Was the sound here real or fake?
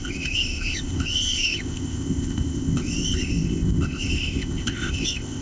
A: fake